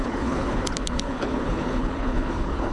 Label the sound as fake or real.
fake